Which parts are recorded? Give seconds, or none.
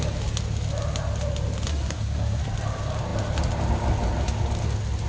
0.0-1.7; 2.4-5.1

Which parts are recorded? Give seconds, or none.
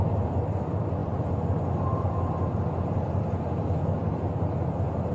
0.0-5.1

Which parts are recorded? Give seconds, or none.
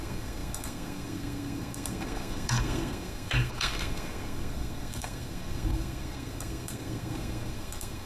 none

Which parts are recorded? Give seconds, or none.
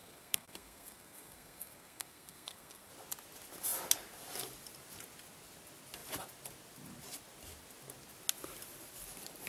2.9-9.5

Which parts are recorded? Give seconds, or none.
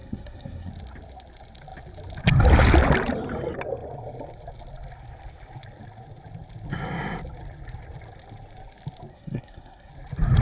0.7-9.1; 9.9-10.4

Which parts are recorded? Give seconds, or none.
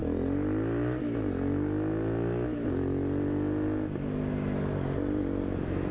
0.0-5.9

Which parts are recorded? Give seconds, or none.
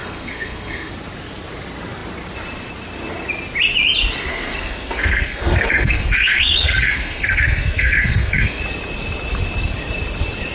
0.9-4.3; 8.6-10.5